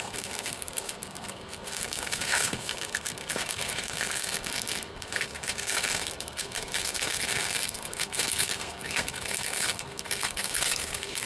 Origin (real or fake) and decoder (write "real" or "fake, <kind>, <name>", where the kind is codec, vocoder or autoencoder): fake, codec, SNAC